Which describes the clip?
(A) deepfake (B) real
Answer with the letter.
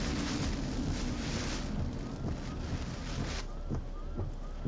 B